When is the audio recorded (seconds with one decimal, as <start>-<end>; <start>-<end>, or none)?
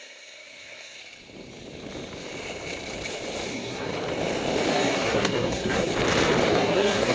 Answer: 1.0-3.5; 3.9-4.7; 5.9-6.5